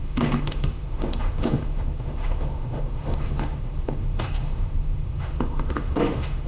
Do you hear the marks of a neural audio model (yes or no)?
yes